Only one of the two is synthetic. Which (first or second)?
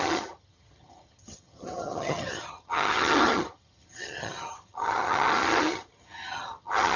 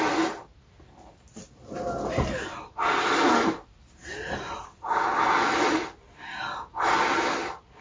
first